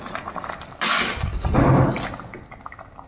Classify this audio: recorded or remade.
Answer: recorded